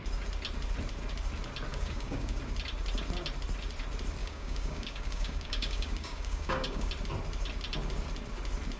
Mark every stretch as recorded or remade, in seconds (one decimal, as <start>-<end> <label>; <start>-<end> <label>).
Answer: 0.0-1.7 recorded; 1.7-2.4 remade; 2.4-4.2 recorded; 4.2-6.9 remade; 6.9-8.8 recorded